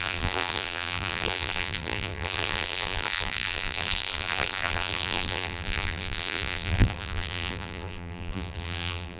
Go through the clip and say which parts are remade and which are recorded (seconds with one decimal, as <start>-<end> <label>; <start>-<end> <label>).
0.0-9.2 remade